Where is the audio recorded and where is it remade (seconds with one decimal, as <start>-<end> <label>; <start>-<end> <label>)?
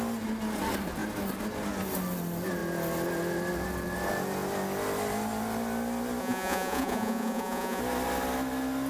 0.0-6.2 recorded; 6.2-7.8 remade; 7.8-8.9 recorded